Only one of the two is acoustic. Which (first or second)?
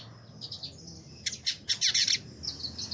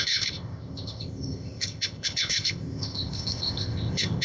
first